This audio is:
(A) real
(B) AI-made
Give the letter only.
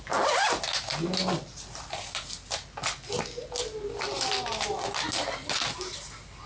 A